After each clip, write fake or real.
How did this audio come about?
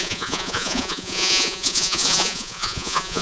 fake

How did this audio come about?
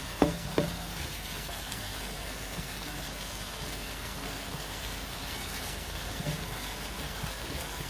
fake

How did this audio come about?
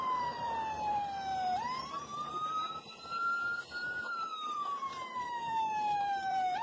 fake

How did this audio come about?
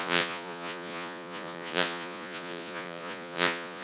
fake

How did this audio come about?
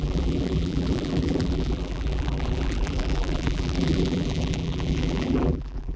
fake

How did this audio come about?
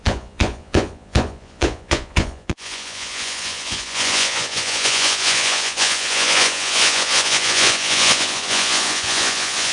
fake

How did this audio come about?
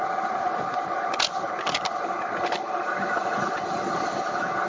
real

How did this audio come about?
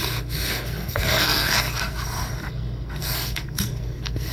fake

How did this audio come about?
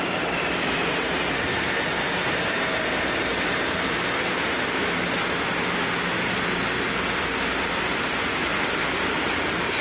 real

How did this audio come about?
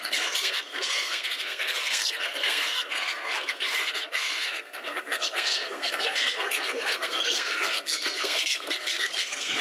fake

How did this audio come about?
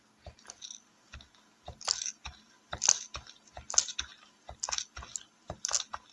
real